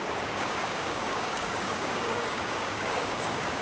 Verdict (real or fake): fake